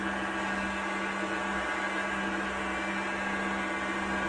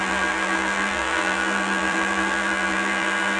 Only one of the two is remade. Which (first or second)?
second